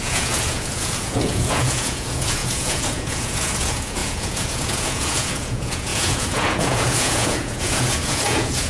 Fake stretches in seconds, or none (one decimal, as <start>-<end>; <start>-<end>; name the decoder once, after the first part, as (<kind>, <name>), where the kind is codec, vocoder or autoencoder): 0.0-8.7 (vocoder, Vocos)